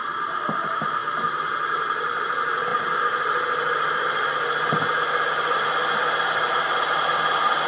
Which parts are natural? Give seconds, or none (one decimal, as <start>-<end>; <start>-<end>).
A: 0.0-0.6; 2.7-5.9